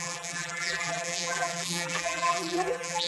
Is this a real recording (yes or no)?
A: no